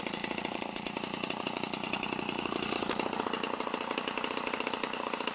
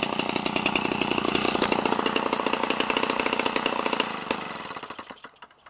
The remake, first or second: first